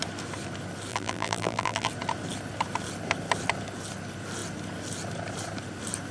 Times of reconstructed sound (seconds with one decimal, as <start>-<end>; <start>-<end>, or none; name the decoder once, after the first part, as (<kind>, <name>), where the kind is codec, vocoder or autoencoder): 0.9-1.9 (vocoder, BigVGAN v2)